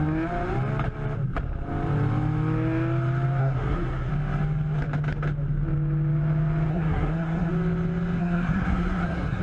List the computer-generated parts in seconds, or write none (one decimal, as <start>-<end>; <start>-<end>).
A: 3.4-4.1; 6.7-7.5; 8.2-9.4

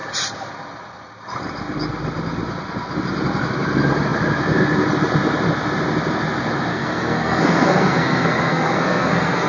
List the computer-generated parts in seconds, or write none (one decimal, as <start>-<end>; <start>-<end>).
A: 6.7-9.5

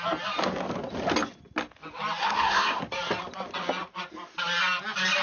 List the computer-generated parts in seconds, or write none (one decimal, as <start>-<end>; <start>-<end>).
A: 2.2-2.8

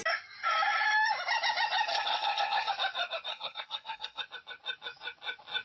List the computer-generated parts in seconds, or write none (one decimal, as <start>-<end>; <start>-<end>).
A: 1.9-2.7; 3.3-4.2

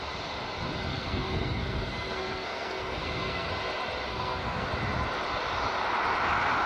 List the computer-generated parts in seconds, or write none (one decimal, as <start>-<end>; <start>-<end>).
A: 0.9-3.5; 4.1-4.7